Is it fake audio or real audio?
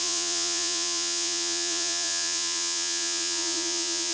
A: fake